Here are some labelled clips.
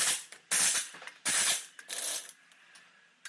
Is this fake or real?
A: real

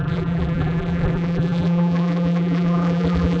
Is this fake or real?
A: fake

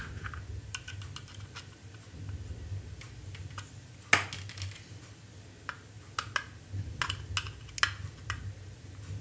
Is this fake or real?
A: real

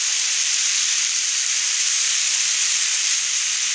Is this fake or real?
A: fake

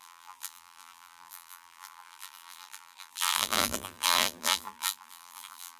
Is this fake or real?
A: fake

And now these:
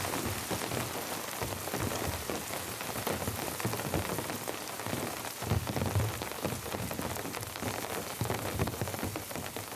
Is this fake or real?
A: real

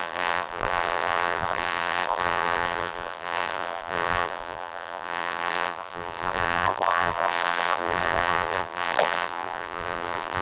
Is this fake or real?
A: fake